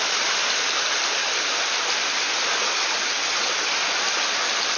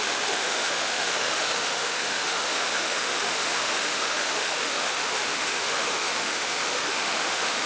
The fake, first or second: second